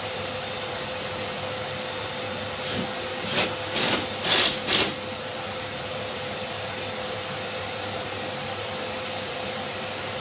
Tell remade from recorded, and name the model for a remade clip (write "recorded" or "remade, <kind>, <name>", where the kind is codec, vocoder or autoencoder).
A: recorded